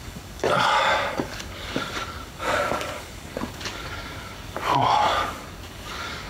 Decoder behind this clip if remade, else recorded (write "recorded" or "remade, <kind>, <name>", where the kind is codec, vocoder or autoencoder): remade, codec, DAC